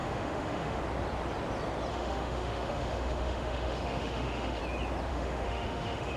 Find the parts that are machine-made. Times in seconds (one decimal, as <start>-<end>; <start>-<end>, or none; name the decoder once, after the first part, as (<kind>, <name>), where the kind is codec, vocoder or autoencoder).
0.0-0.8 (autoencoder, DAC-VAE); 1.9-4.6; 5.1-6.2